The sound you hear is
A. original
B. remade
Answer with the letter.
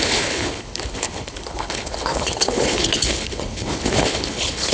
B